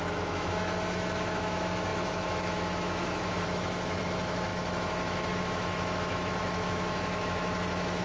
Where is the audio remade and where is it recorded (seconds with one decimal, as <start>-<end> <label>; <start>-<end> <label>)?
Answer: 0.0-8.0 remade